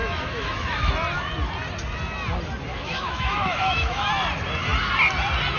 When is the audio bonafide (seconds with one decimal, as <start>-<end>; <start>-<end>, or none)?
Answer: 0.9-2.7; 4.1-5.6